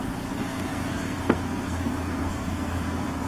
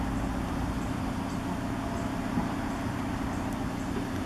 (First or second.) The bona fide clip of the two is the second